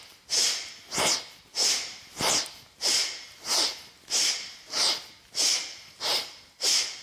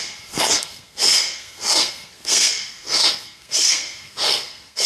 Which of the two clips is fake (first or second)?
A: second